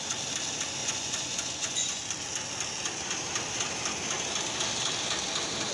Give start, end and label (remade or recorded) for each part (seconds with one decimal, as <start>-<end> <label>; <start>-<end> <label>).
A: 0.0-0.8 recorded; 0.8-2.0 remade; 2.0-5.7 recorded